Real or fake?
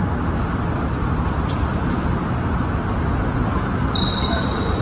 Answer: real